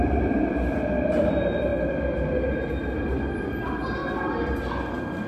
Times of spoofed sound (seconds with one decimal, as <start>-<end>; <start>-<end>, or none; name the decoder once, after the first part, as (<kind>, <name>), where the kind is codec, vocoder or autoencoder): 0.0-1.7 (vocoder, BigVGAN v2); 3.5-4.0